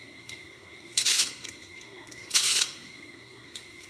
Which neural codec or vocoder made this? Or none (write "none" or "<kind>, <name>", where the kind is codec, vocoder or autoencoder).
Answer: codec, SNAC